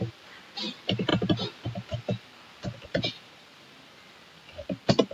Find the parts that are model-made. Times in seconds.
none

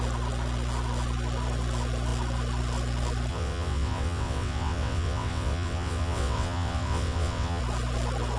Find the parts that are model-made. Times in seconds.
3.3-7.6 (vocoder, WaveNeXt)

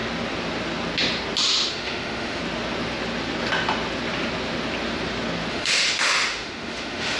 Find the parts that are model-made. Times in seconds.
1.7-2.4 (autoencoder, DAC-VAE); 5.5-7.2